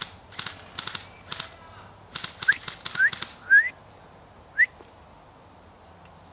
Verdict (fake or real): real